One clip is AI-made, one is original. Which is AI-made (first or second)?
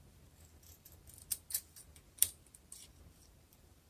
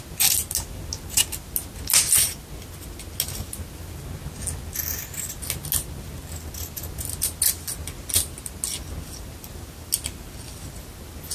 first